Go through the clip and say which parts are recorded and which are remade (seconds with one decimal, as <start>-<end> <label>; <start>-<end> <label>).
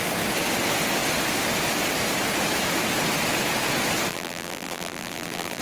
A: 0.0-4.1 recorded; 4.1-5.6 remade